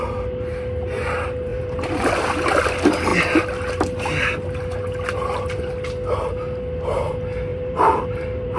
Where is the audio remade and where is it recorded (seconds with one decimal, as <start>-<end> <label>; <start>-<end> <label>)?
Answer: 0.0-1.5 recorded; 1.5-2.1 remade; 2.1-7.5 recorded; 7.5-8.6 remade